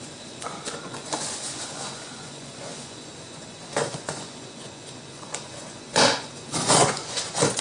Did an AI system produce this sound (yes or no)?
yes